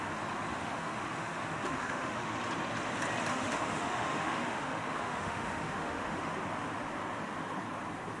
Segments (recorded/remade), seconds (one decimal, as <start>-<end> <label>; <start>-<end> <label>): 0.0-0.5 recorded; 0.5-2.3 remade; 2.3-3.3 recorded; 3.3-6.3 remade; 6.3-8.2 recorded